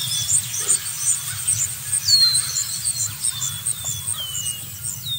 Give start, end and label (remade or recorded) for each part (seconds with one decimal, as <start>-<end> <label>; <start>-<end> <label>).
0.0-3.1 remade; 3.1-5.2 recorded